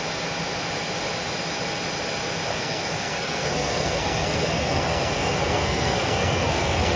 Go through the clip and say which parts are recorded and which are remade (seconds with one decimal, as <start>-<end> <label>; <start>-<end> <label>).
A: 0.0-2.5 recorded; 2.5-7.0 remade